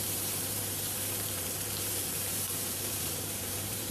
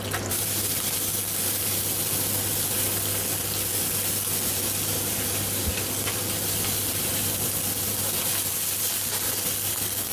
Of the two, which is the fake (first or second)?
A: first